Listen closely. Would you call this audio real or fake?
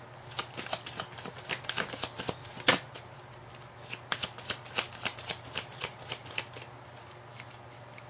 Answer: real